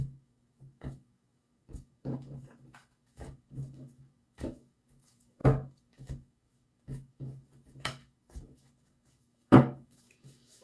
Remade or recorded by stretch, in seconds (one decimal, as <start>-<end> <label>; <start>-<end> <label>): 0.0-10.6 remade

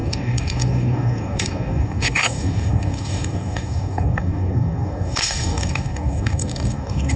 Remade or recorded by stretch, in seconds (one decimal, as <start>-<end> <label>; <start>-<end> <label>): 0.0-7.2 remade

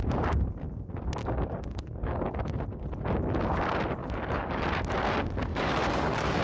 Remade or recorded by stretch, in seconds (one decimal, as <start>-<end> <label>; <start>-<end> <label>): 0.0-1.2 recorded; 1.2-2.6 remade; 2.6-4.0 recorded; 4.0-4.6 remade; 4.6-5.5 recorded; 5.5-6.4 remade

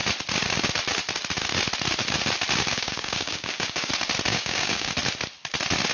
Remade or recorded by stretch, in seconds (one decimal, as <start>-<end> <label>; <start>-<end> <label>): 0.0-2.7 recorded; 2.7-3.9 remade; 3.9-4.3 recorded; 4.3-4.9 remade; 4.9-5.9 recorded